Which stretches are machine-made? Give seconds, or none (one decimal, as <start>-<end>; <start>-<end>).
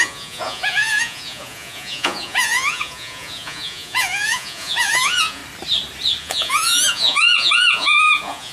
0.0-5.4; 6.2-8.5